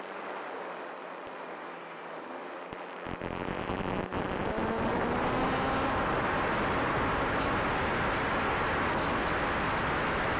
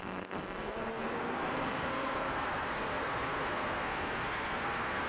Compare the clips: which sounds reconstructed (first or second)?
second